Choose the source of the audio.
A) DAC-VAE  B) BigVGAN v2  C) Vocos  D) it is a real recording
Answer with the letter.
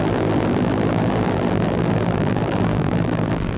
B